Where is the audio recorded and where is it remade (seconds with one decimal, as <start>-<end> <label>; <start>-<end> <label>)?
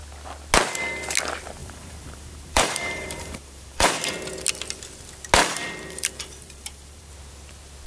0.0-1.6 recorded; 1.6-4.1 remade; 4.1-5.4 recorded; 5.4-7.1 remade; 7.1-7.9 recorded